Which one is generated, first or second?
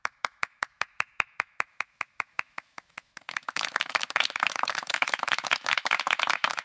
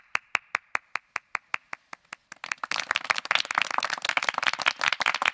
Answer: first